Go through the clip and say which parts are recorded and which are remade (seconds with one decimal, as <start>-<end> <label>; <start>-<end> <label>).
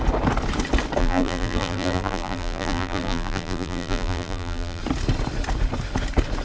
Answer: 0.0-1.0 recorded; 1.0-4.8 remade; 4.8-6.4 recorded